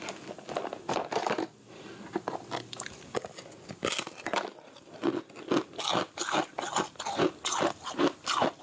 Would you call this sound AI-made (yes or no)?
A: no